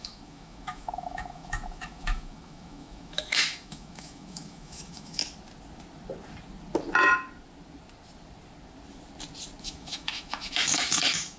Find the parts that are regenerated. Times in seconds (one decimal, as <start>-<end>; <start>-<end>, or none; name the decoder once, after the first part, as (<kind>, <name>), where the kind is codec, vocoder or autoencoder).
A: 0.0-5.2 (autoencoder, DAC-VAE); 9.6-11.4